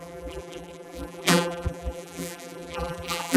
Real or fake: fake